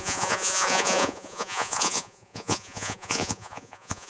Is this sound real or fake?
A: fake